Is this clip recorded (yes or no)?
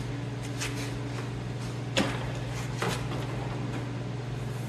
yes